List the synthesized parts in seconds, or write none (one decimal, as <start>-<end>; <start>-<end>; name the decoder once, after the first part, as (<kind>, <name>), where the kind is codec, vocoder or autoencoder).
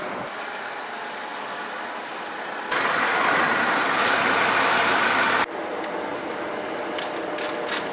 6.1-6.8 (vocoder, BigVGAN v2)